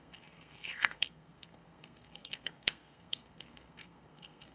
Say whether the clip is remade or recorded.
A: remade